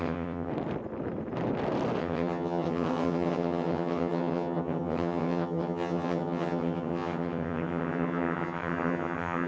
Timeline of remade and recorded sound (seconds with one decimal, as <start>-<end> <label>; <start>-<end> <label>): 0.0-0.5 remade; 0.5-2.0 recorded; 2.0-9.5 remade